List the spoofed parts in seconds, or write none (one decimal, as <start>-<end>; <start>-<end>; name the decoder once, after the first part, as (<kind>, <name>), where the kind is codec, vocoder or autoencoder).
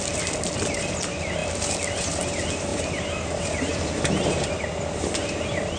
none